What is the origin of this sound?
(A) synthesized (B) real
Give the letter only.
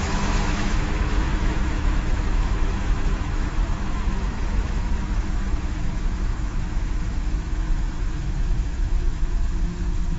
A